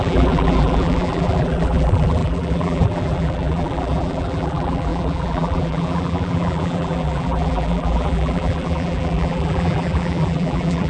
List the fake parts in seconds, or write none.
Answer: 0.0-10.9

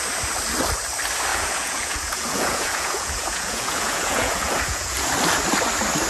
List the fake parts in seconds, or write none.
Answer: 1.3-5.0

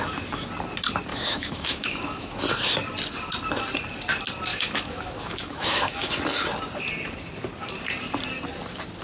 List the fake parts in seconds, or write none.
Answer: 1.1-2.4; 4.5-6.1

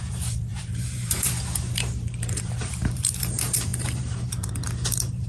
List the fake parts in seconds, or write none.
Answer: 0.0-5.3

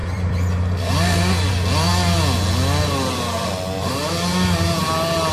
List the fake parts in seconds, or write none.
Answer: 0.0-1.5

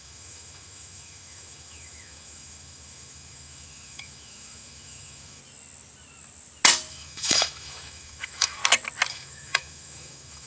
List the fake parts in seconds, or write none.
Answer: 0.0-5.4; 6.9-8.6; 9.1-10.5

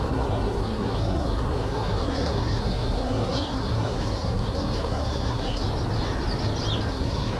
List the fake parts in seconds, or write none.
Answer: 0.0-5.6; 6.9-7.4